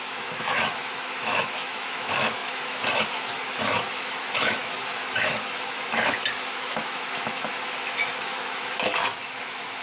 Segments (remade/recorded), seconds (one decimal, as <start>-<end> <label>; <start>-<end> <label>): 0.0-9.8 remade